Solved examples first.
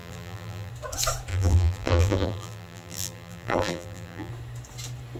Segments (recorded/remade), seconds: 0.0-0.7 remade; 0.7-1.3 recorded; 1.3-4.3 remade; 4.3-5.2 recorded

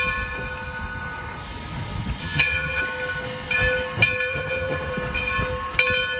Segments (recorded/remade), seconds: 0.0-2.2 recorded; 2.2-2.8 remade; 2.8-4.3 recorded; 4.3-4.9 remade; 4.9-6.2 recorded

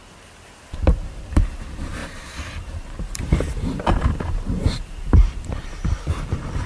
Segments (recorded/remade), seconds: 0.0-0.9 recorded; 0.9-6.7 remade

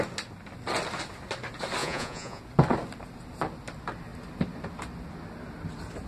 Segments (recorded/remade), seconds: 0.0-1.8 recorded; 1.8-2.4 remade; 2.4-6.1 recorded